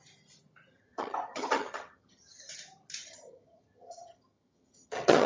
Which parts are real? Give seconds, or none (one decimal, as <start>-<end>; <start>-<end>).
0.0-0.7; 2.5-3.0

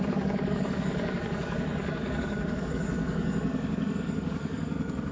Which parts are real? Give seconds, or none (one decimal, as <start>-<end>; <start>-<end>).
none

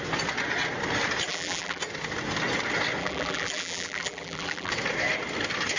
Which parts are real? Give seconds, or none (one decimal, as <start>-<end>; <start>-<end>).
0.0-1.3; 1.8-3.0; 4.7-5.8